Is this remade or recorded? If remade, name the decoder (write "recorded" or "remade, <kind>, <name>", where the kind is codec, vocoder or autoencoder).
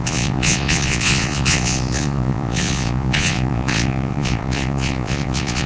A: remade, vocoder, Vocos